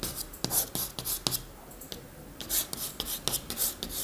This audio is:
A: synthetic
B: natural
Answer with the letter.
B